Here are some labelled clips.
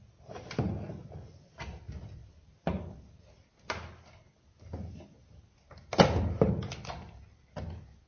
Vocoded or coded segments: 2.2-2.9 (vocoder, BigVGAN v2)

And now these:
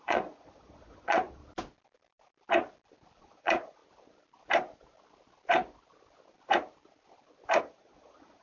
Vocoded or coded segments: 0.0-1.4 (vocoder, Vocos); 3.2-3.8; 7.6-8.4